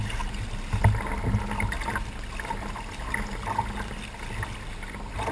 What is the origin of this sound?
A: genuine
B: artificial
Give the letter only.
A